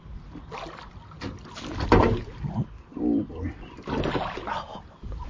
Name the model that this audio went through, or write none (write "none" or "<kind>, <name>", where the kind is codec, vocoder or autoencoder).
none